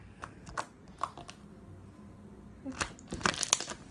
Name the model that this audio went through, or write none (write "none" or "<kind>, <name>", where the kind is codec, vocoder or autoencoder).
none